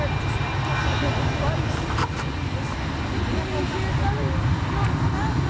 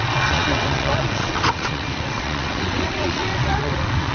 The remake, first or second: second